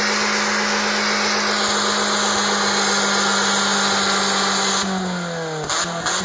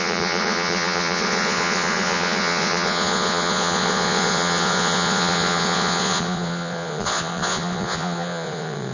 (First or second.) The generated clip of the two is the second